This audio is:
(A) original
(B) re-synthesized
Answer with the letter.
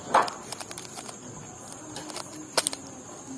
A